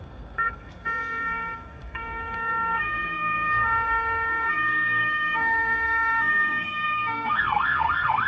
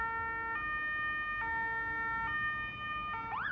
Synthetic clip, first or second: first